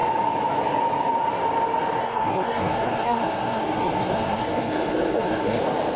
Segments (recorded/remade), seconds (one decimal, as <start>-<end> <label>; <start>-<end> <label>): 0.0-2.0 recorded; 2.0-5.6 remade; 5.6-6.0 recorded